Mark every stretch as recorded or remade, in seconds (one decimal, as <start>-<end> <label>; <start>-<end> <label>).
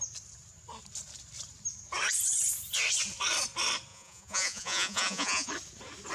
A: 0.0-3.9 recorded; 3.9-5.5 remade; 5.5-6.1 recorded